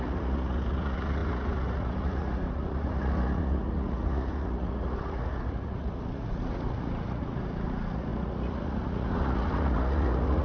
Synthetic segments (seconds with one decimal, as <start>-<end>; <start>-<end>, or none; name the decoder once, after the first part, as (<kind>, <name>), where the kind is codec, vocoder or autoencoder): 0.0-10.4 (vocoder, Vocos)